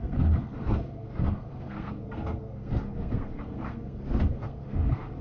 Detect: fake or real fake